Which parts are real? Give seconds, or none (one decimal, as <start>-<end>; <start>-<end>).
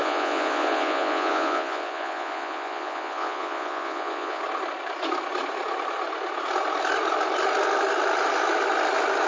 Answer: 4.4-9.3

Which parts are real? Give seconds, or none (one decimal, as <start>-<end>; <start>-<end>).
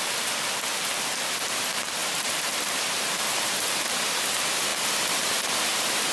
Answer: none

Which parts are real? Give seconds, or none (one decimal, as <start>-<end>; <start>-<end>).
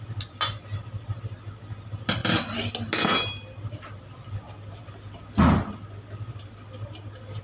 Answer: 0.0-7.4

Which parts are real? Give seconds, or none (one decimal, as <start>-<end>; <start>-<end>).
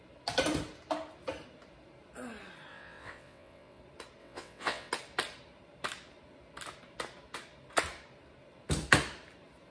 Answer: 0.0-2.7; 3.8-4.2; 4.9-9.7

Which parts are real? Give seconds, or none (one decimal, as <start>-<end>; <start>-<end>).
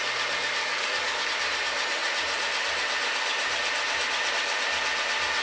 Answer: 0.0-0.6; 1.3-5.4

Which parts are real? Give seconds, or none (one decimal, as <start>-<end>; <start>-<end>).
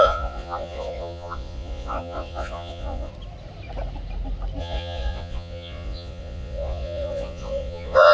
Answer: 3.1-4.6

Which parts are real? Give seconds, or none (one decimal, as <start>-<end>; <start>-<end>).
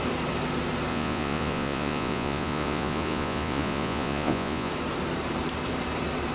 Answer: 0.0-0.9; 4.7-6.3